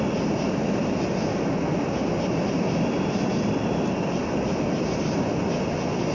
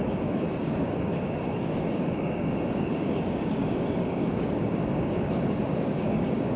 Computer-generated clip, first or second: second